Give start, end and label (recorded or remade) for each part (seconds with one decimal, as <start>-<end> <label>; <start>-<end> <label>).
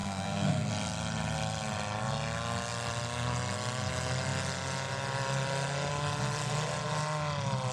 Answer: 0.0-0.7 remade; 0.7-7.7 recorded